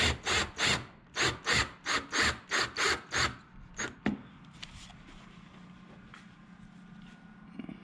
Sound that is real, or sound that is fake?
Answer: real